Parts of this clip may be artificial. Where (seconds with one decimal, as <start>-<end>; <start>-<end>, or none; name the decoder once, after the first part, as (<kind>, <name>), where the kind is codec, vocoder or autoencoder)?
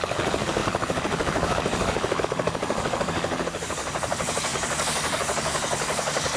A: 0.0-6.4 (codec, DAC)